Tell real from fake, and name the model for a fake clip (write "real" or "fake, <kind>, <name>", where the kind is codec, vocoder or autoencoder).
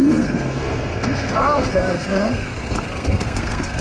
fake, codec, SNAC